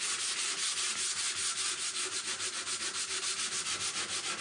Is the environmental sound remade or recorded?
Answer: recorded